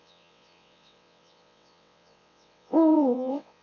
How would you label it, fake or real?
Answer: fake